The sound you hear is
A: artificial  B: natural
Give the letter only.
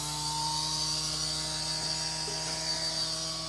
B